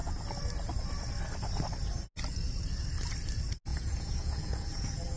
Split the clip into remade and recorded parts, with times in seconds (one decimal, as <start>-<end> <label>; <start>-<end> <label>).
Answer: 0.0-3.7 recorded; 3.7-5.2 remade